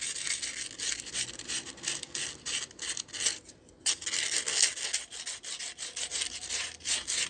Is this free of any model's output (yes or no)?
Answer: yes